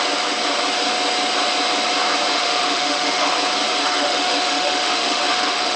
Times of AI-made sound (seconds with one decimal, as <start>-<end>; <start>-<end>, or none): 2.3-3.3; 3.8-5.8